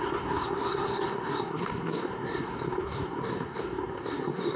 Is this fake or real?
fake